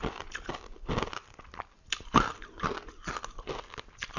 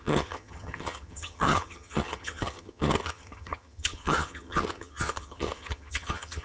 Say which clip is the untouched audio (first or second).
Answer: first